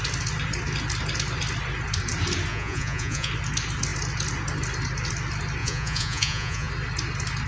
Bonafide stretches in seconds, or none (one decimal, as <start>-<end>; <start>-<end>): 0.0-2.5; 3.3-5.6; 6.7-7.5

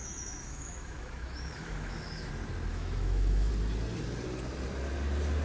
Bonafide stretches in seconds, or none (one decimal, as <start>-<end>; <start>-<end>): 2.3-2.7; 3.5-5.4